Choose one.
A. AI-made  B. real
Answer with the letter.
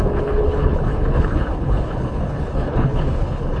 A